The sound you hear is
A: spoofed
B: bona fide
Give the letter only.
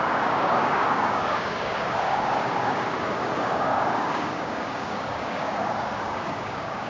A